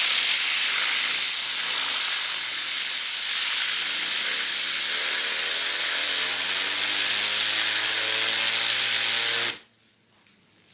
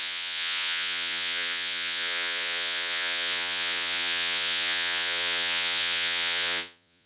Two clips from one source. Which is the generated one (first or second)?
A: second